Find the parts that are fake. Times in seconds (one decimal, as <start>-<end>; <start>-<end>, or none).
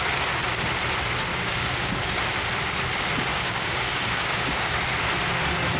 1.3-2.0; 3.3-4.7